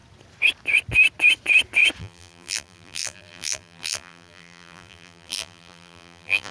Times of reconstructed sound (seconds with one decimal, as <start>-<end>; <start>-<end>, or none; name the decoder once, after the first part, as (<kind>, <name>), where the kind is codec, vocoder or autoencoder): 2.0-6.5 (vocoder, BigVGAN v2)